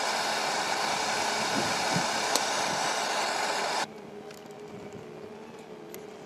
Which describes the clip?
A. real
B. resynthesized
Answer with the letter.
A